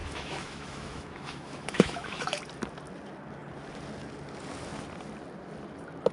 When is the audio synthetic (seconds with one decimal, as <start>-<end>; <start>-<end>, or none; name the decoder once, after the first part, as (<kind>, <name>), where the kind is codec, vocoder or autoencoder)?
0.0-2.4 (autoencoder, DAC-VAE)